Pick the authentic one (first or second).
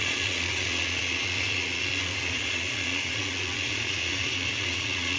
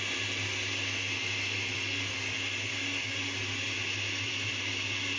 second